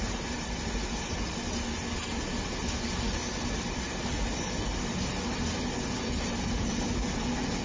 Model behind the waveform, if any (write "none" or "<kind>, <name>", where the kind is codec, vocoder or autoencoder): none